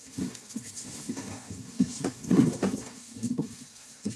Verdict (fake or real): fake